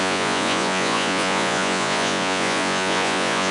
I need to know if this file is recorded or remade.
remade